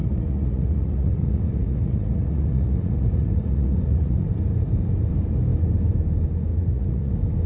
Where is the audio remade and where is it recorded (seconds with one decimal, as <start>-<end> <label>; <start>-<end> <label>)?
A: 0.0-4.3 remade; 4.3-6.5 recorded; 6.5-7.1 remade; 7.1-7.5 recorded